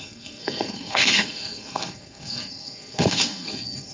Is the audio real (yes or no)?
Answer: no